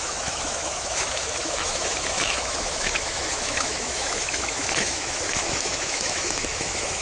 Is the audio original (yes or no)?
no